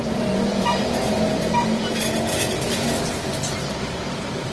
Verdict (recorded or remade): remade